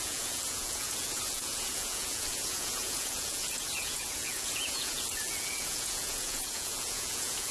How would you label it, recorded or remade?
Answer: remade